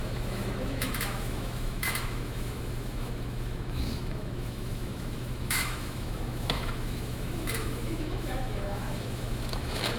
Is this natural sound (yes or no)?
no